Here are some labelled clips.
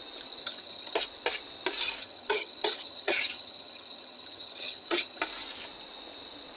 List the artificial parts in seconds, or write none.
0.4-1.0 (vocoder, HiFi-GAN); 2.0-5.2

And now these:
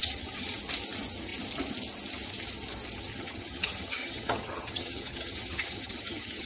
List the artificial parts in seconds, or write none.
0.0-0.5 (vocoder, HiFi-GAN); 3.1-6.5